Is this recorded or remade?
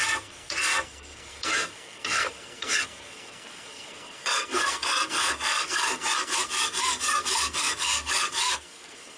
remade